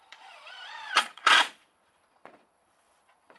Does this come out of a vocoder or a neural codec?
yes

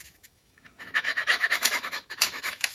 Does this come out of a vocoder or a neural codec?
yes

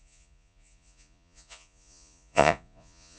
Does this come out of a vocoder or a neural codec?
yes